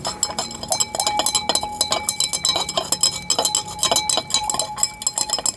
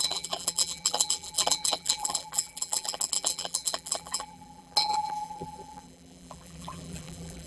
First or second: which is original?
first